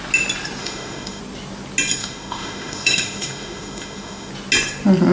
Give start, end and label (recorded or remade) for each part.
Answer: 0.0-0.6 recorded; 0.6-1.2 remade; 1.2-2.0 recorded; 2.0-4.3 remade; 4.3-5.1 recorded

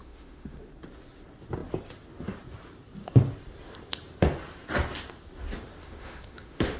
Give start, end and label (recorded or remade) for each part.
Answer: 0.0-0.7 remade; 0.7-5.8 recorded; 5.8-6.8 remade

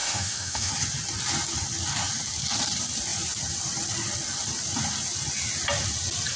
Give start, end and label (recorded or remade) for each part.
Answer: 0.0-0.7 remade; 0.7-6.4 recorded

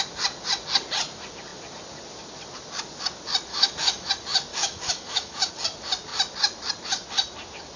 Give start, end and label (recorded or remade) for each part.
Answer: 0.0-3.5 recorded; 3.5-4.1 remade; 4.1-4.5 recorded; 4.5-5.5 remade; 5.5-7.8 recorded

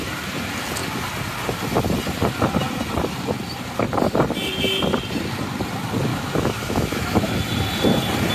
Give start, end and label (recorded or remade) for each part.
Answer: 0.0-6.1 recorded; 6.1-7.3 remade; 7.3-8.3 recorded

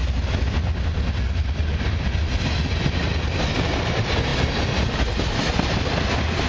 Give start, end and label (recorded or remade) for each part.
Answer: 0.0-6.5 recorded